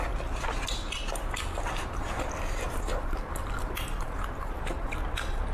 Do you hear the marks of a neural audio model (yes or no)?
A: no